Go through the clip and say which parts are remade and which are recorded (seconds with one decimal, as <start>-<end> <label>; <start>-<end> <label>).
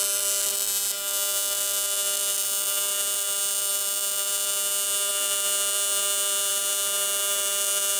0.0-8.0 recorded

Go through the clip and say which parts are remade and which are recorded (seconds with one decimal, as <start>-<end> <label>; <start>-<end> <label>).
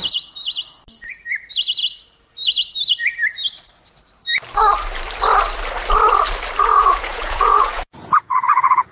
0.0-6.7 recorded; 6.7-8.9 remade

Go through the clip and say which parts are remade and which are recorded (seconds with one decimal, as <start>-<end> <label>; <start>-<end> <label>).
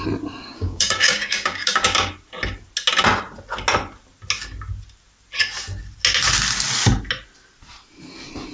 0.0-0.4 recorded; 0.4-2.1 remade; 2.1-8.5 recorded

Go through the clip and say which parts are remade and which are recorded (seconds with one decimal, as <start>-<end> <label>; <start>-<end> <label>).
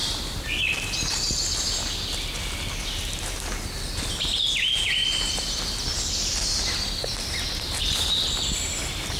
0.0-9.2 recorded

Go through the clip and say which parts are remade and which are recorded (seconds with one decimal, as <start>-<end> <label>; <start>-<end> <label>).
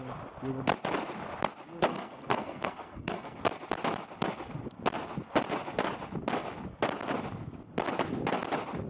0.0-1.9 recorded; 1.9-3.4 remade; 3.4-8.9 recorded